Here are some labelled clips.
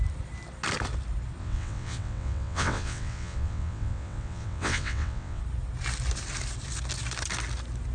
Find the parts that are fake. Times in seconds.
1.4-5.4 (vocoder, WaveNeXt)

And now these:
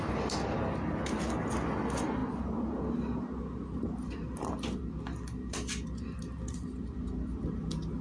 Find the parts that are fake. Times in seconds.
none

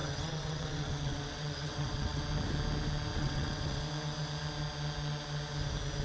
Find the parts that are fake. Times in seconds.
0.0-2.2 (vocoder, WaveNeXt); 3.1-3.8

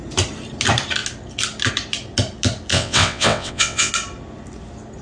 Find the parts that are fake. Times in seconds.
2.7-3.9 (vocoder, WaveNeXt)

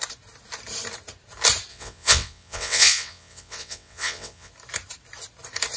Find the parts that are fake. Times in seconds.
1.7-4.5 (vocoder, WaveNeXt)

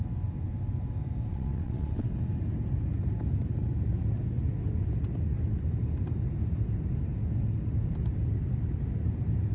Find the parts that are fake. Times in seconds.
1.3-2.1 (vocoder, WaveNeXt)